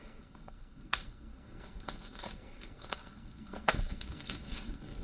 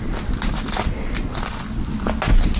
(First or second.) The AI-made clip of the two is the first